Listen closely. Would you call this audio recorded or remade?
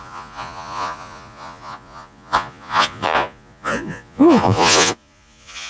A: remade